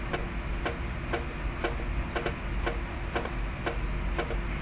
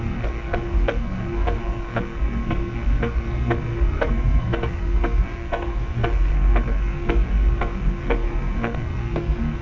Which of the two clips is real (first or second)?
first